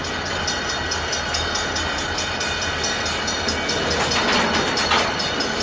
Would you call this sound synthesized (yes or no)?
no